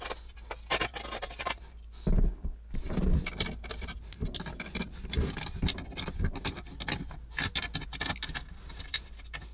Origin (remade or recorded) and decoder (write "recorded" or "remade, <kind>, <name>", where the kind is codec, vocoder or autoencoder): recorded